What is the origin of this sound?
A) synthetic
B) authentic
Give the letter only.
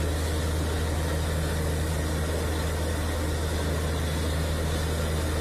B